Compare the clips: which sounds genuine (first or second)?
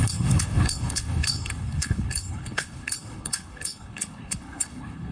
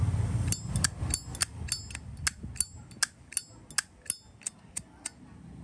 second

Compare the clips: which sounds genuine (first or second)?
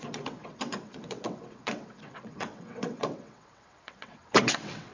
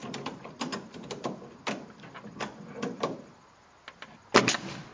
second